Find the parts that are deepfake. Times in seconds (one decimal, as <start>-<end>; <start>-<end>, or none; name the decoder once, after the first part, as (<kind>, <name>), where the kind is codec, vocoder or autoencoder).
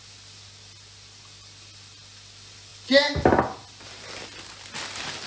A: none